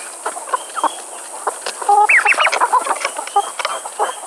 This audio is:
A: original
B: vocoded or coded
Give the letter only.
A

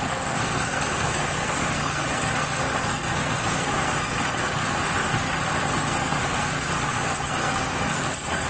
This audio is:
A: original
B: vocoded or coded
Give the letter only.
B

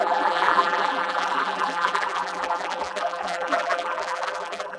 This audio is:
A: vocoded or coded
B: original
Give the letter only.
A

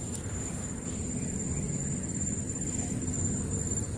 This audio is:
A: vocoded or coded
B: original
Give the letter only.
B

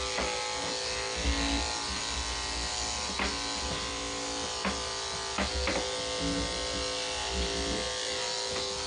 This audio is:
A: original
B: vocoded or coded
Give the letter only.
A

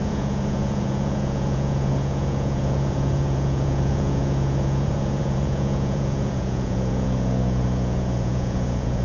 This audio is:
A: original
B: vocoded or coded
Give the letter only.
B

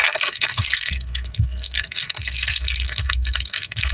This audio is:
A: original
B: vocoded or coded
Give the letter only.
B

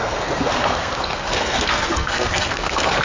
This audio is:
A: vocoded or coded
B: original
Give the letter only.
A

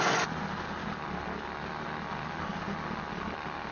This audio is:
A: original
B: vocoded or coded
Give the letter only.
A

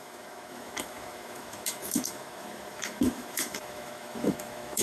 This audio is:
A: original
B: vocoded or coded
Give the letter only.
B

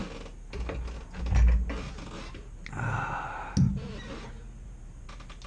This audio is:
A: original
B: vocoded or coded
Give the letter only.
A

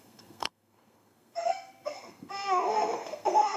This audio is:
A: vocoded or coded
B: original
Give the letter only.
A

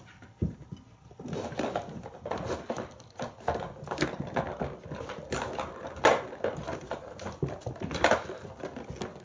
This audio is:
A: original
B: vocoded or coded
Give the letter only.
A